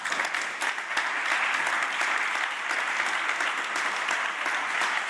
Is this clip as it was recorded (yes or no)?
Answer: yes